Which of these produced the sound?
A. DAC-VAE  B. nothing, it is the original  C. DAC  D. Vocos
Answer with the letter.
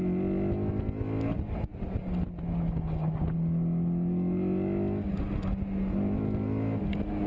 B